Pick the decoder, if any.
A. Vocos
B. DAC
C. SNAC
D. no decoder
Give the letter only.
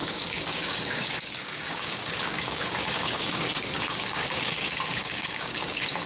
B